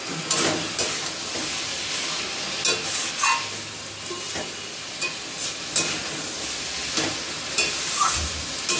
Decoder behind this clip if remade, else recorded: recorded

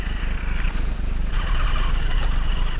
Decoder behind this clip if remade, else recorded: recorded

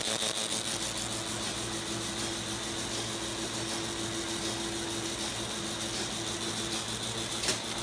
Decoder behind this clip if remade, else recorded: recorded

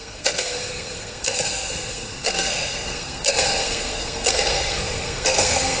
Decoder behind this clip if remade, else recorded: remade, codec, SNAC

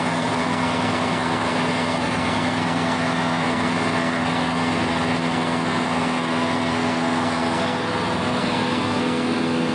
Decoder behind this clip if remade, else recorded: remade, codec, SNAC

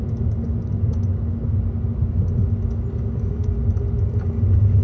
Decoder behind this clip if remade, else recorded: recorded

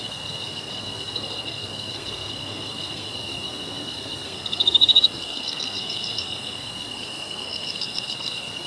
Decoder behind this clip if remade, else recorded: remade, codec, SNAC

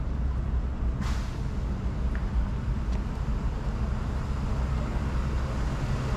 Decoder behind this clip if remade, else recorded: recorded